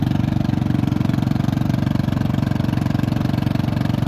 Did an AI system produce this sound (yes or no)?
no